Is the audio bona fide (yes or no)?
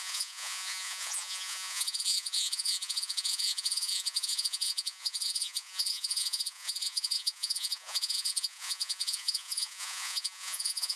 no